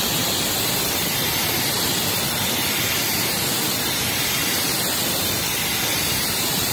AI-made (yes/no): yes